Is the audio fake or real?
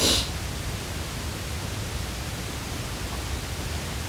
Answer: real